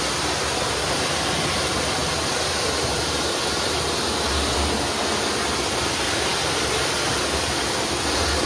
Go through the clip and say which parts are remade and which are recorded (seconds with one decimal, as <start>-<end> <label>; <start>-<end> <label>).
0.0-8.5 recorded